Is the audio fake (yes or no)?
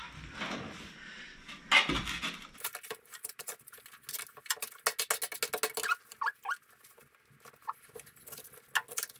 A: no